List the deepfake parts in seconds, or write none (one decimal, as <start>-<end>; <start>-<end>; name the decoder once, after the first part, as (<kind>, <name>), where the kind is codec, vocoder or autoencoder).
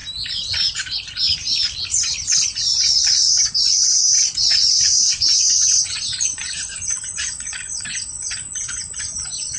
3.3-9.6 (vocoder, Vocos)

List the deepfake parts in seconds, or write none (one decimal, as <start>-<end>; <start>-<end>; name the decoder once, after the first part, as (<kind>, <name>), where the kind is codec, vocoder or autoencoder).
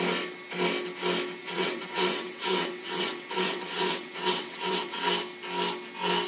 1.4-5.0 (vocoder, WaveNeXt)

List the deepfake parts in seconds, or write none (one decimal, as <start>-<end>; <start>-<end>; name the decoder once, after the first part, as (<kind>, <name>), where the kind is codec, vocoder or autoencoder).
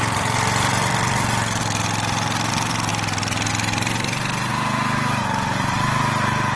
0.0-1.6 (vocoder, BigVGAN v2); 2.5-2.9; 3.5-4.5; 5.2-6.6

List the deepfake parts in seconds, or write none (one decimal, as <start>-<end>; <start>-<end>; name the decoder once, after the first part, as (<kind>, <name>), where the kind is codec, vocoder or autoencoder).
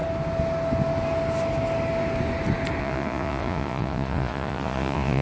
2.8-5.2 (vocoder, Vocos)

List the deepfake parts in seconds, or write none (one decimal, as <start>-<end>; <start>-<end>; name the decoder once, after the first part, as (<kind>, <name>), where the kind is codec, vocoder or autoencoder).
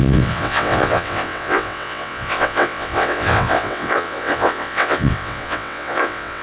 0.0-6.4 (vocoder, WaveNeXt)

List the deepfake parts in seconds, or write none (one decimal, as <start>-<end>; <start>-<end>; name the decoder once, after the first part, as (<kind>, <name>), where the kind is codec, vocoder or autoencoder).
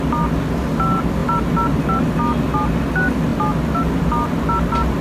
1.2-1.8 (vocoder, BigVGAN v2)